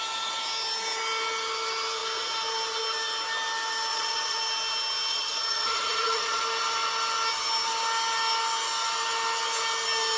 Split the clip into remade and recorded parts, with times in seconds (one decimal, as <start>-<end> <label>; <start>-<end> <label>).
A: 0.0-3.9 recorded; 3.9-4.4 remade; 4.4-5.1 recorded; 5.1-6.4 remade; 6.4-10.2 recorded